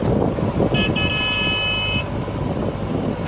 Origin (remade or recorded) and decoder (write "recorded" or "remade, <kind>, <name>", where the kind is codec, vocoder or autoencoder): recorded